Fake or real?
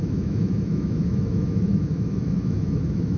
fake